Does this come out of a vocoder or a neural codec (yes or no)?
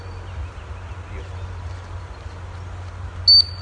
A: no